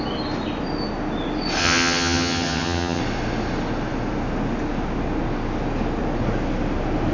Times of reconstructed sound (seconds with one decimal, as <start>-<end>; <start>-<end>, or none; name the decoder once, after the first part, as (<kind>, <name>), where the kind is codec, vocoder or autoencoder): 1.6-3.0 (vocoder, HiFi-GAN)